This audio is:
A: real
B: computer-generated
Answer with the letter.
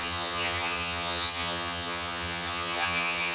B